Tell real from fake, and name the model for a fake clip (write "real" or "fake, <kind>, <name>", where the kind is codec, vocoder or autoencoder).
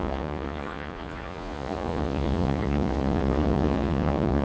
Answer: fake, vocoder, Vocos